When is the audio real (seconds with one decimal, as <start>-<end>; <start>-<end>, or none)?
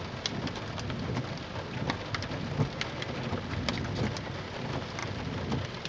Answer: 0.0-5.0